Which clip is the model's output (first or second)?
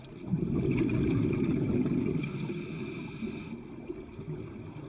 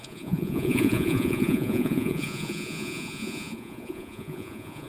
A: second